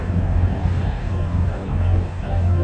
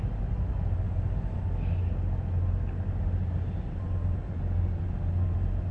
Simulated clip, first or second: first